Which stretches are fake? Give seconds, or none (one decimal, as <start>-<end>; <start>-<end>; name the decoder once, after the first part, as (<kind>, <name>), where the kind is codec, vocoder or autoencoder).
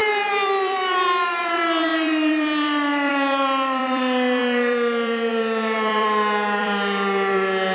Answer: 0.0-7.7 (vocoder, BigVGAN v2)